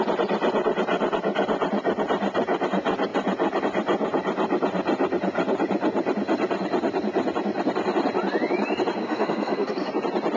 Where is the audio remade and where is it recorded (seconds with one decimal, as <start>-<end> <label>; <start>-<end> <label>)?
0.0-9.0 recorded; 9.0-9.9 remade; 9.9-10.4 recorded